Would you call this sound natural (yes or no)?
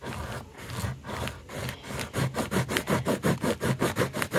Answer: yes